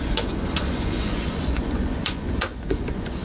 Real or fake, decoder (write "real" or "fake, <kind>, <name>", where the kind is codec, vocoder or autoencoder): fake, vocoder, Vocos